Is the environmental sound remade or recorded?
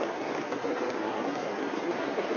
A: remade